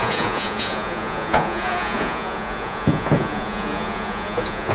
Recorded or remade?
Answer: remade